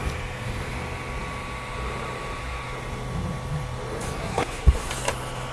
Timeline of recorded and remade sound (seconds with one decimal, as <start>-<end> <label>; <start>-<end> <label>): 0.0-4.2 recorded; 4.2-4.9 remade; 4.9-5.5 recorded